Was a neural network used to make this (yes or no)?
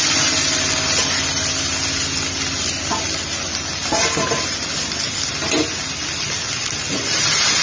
no